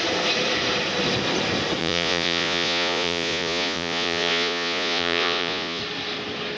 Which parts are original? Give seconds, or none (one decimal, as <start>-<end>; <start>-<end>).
0.0-1.8; 5.8-6.6